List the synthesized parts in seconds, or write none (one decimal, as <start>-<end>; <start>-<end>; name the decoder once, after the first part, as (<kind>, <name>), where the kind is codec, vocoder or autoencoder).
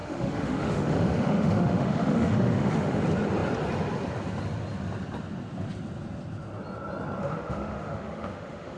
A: 0.0-3.0 (autoencoder, DAC-VAE); 7.2-8.8